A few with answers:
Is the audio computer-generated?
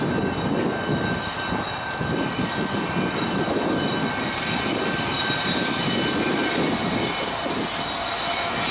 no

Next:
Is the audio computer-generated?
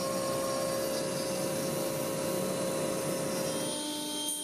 no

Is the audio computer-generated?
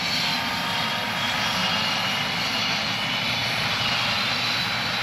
no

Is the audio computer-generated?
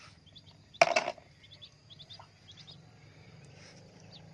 no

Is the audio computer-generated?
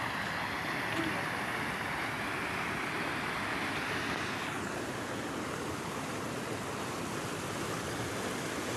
no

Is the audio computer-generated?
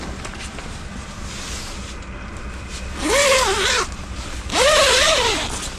no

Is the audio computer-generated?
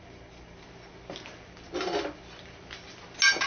no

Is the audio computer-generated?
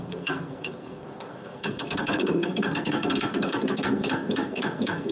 yes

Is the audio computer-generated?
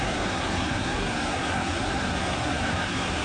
yes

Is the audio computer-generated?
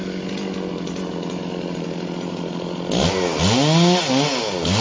no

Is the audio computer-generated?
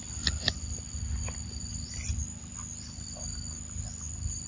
no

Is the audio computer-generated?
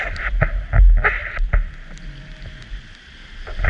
no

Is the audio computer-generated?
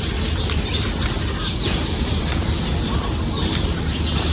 no